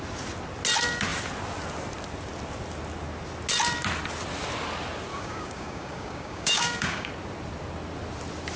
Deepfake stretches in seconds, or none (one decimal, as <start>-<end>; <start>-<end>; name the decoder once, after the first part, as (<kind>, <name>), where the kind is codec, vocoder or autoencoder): 5.1-7.1 (codec, DAC)